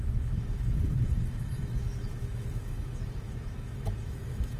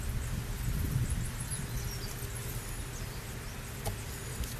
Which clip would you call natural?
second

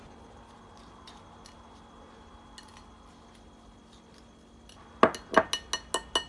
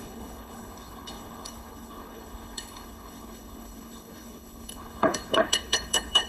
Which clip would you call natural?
first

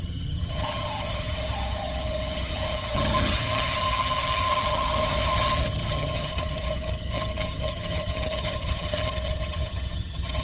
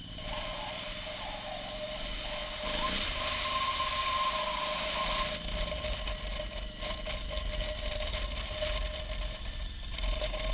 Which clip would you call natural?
second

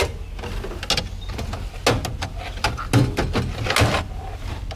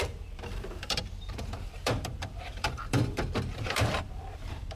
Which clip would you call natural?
first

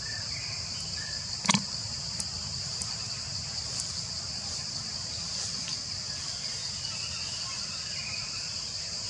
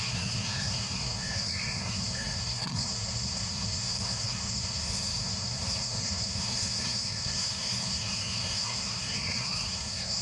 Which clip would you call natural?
first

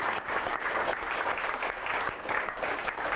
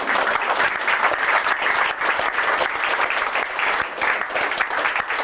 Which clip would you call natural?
second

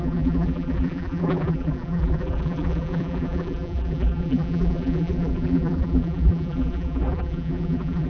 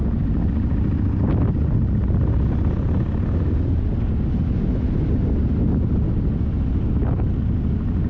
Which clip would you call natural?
second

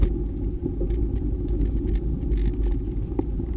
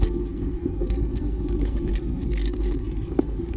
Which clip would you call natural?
first